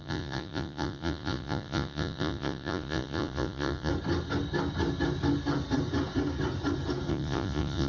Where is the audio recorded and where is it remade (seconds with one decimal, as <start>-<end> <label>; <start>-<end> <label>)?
0.0-3.9 remade; 3.9-7.1 recorded; 7.1-7.9 remade